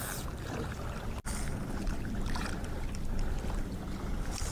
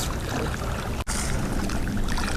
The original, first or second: second